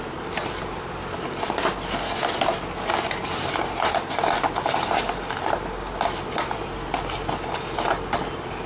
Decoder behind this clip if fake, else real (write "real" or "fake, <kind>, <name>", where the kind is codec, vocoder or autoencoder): real